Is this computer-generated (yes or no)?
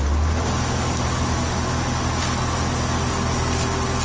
no